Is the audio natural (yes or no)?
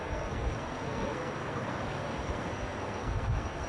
no